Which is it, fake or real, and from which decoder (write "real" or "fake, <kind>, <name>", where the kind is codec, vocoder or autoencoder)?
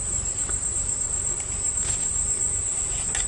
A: real